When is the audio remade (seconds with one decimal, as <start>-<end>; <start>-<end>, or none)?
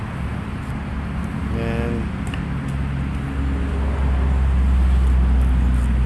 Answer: none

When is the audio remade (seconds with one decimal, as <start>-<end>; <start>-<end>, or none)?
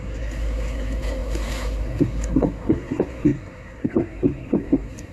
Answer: 0.0-5.1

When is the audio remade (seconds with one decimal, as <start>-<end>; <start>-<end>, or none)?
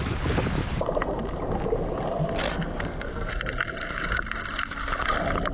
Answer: 2.4-3.3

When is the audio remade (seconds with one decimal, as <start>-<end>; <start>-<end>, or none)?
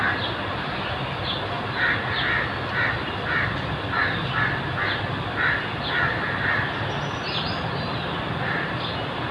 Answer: none